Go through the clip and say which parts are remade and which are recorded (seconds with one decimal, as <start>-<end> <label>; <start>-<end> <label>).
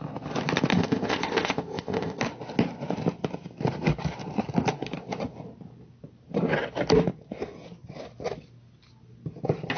0.0-0.7 recorded; 0.7-2.2 remade; 2.2-9.8 recorded